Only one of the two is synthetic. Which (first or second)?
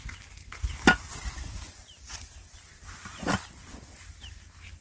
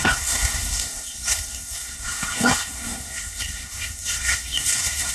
second